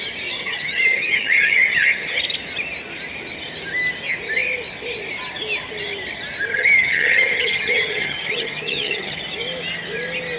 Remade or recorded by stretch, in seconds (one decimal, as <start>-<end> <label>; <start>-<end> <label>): 0.0-0.4 recorded; 0.4-2.2 remade; 2.2-6.5 recorded; 6.5-9.2 remade; 9.2-10.4 recorded